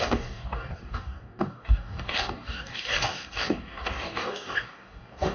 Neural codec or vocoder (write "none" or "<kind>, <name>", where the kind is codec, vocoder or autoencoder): codec, DAC